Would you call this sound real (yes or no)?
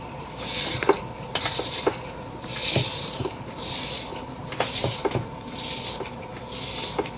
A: yes